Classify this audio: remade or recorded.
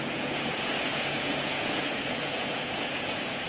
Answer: remade